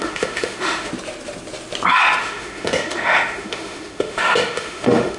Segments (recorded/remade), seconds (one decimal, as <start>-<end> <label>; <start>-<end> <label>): 0.0-0.9 remade; 0.9-2.2 recorded; 2.2-5.2 remade